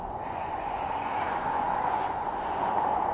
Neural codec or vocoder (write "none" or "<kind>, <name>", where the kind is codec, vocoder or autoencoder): vocoder, Vocos